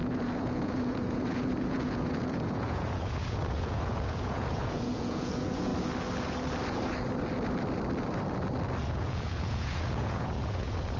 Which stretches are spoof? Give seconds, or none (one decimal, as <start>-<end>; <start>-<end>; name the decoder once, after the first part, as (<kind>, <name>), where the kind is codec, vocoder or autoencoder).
0.0-5.7 (vocoder, Vocos); 8.9-11.0